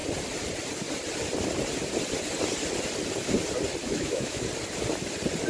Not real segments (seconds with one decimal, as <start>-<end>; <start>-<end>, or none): 3.8-4.4